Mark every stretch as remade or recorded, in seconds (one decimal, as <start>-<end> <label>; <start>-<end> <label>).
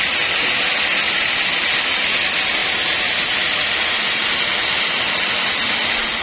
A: 0.0-6.2 recorded